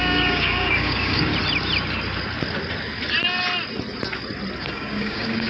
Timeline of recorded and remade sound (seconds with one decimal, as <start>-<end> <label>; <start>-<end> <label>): 0.0-1.3 remade; 1.3-4.6 recorded; 4.6-5.5 remade